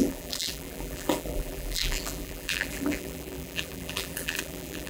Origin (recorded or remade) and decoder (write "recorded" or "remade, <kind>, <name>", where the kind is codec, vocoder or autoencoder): remade, vocoder, BigVGAN v2